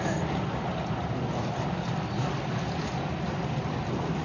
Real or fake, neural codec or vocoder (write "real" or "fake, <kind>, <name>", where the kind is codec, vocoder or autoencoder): real